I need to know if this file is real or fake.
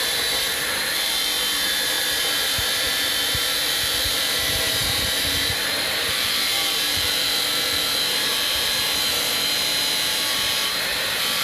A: fake